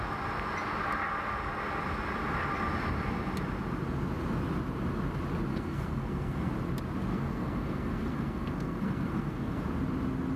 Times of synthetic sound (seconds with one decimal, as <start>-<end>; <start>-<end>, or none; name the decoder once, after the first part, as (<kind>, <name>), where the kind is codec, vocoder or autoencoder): 5.5-6.5 (codec, SNAC); 7.1-9.6